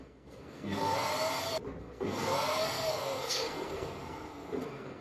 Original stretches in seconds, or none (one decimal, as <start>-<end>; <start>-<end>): 1.1-1.8